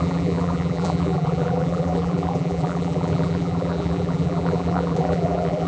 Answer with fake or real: fake